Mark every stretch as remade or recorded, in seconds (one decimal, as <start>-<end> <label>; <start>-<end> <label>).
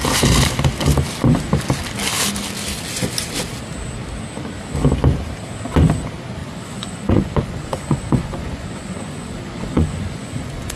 0.0-6.4 recorded; 6.4-10.8 remade